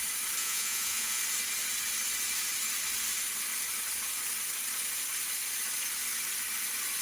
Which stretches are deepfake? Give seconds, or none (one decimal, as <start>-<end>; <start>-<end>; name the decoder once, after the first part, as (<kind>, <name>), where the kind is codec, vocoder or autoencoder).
0.4-1.2 (vocoder, Vocos)